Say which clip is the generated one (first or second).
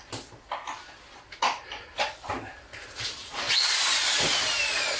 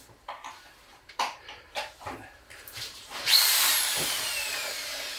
second